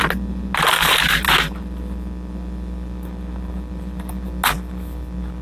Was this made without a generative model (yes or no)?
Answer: yes